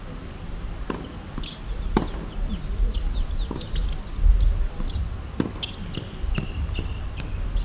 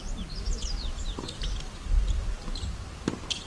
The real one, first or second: first